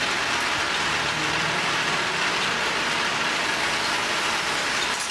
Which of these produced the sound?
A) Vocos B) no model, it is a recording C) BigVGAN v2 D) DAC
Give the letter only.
C